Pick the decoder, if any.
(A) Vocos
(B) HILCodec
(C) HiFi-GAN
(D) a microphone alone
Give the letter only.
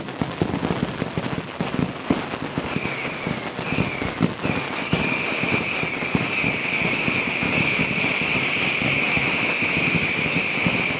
D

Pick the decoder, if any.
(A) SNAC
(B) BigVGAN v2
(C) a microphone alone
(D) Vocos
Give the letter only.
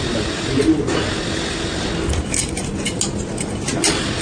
C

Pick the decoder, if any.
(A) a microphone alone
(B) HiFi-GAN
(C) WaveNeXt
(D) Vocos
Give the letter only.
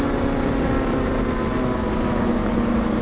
A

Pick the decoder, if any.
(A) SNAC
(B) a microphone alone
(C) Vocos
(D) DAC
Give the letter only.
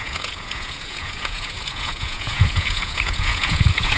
C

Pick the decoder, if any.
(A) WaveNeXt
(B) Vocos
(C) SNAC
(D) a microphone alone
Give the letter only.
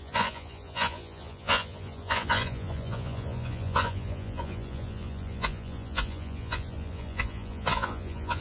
B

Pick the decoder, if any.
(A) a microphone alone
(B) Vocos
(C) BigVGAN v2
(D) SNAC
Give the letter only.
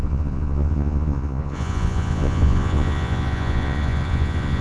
B